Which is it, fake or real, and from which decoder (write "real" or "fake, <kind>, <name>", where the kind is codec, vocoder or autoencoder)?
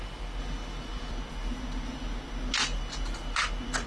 real